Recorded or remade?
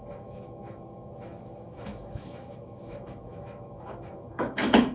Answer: remade